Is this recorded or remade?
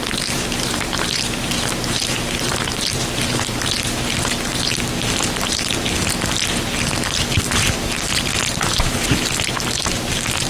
recorded